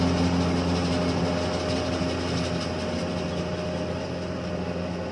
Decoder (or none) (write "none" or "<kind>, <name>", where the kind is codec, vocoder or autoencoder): none